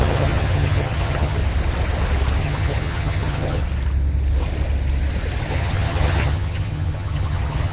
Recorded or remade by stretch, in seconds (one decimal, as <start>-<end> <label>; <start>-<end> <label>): 0.0-1.4 remade; 1.4-2.4 recorded; 2.4-3.6 remade; 3.6-5.5 recorded; 5.5-7.7 remade